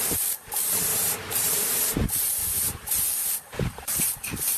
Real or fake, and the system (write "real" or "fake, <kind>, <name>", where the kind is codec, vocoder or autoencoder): fake, vocoder, BigVGAN v2